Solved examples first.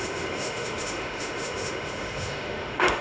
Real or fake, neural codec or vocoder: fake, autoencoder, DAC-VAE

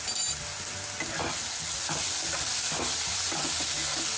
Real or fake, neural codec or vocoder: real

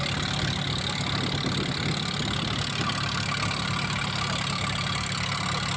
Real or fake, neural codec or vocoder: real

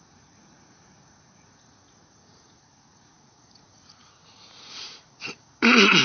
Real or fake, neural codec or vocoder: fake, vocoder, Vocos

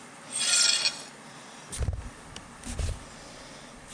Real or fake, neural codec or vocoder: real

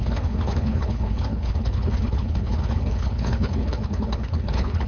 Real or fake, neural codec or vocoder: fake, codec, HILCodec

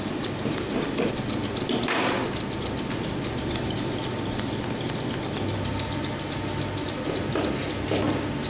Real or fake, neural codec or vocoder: real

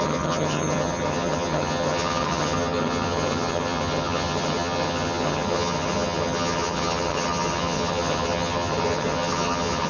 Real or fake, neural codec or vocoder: fake, vocoder, HiFi-GAN